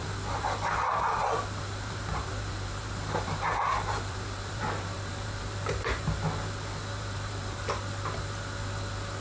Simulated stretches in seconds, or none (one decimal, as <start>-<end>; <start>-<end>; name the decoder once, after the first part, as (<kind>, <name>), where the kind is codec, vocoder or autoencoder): 1.2-6.2 (vocoder, BigVGAN v2); 6.9-7.7